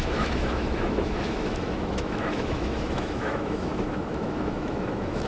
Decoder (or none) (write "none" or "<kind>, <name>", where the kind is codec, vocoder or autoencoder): autoencoder, DAC-VAE